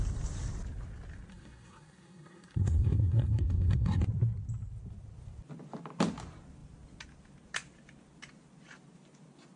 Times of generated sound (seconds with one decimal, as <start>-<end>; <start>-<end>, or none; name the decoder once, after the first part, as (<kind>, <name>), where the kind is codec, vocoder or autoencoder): 1.3-4.0 (codec, SNAC)